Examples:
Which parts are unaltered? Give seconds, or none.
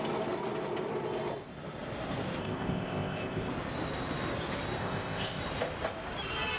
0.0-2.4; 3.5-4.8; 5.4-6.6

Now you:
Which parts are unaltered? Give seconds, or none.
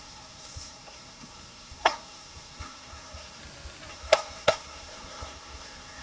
3.4-3.9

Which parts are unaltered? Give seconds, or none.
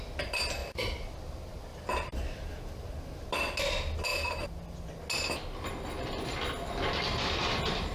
0.0-0.6; 1.1-1.7; 2.5-7.9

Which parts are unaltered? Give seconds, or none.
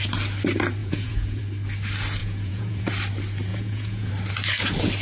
0.0-0.8; 1.4-2.2; 2.9-3.5; 4.1-5.0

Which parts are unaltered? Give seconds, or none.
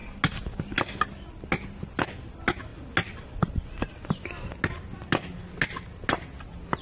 0.0-6.8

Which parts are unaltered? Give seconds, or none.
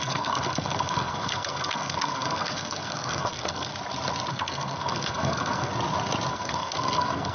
3.7-4.3; 5.7-6.3